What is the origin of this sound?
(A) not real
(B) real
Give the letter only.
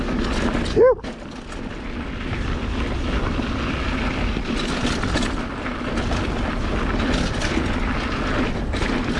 B